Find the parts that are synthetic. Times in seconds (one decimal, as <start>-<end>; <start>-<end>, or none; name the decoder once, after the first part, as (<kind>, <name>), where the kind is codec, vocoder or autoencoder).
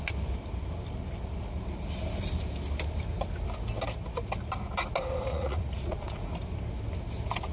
5.3-6.3 (vocoder, Vocos)